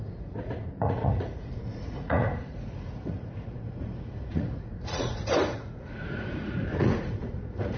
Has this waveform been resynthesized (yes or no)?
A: yes